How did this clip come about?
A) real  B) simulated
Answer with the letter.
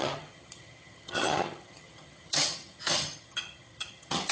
B